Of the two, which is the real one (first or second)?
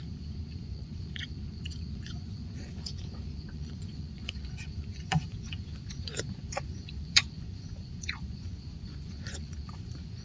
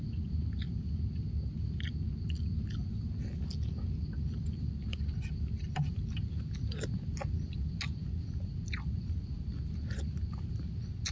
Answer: second